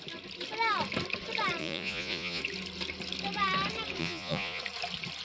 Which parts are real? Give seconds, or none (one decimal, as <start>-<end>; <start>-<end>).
0.0-1.6; 2.4-4.0; 4.6-5.2